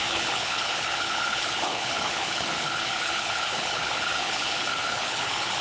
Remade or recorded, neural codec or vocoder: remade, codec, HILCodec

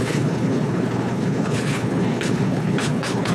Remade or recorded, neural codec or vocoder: remade, codec, HILCodec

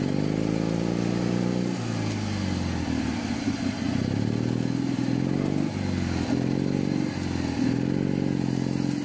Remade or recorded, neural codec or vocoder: recorded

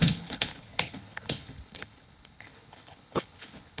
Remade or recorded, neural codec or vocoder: remade, codec, HILCodec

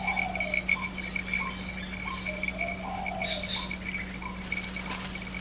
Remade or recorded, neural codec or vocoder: recorded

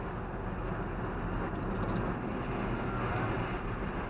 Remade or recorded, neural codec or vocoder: recorded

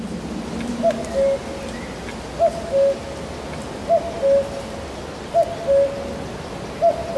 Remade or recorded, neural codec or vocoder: recorded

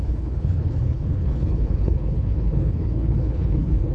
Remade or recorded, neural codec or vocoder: remade, codec, HILCodec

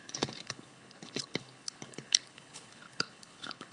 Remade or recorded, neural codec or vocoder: remade, codec, HILCodec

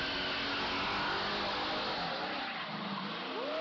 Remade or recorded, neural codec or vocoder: recorded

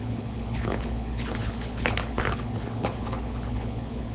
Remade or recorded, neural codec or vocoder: remade, codec, HILCodec